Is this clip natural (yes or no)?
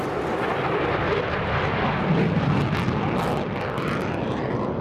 yes